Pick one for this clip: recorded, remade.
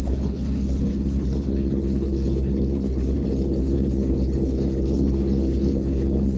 remade